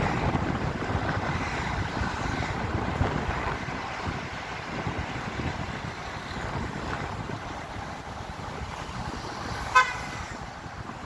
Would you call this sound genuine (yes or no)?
yes